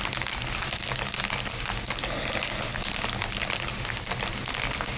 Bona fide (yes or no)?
yes